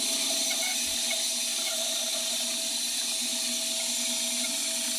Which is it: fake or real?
real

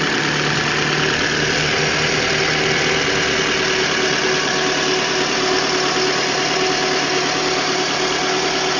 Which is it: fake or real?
real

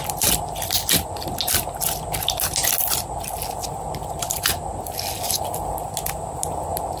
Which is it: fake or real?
real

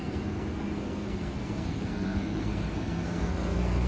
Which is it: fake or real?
fake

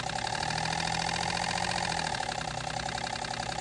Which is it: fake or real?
real